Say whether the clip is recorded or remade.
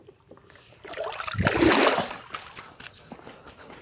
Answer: recorded